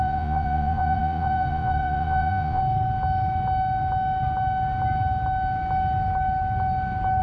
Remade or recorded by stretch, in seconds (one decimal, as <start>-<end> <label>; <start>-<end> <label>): 0.0-2.6 remade; 2.6-7.2 recorded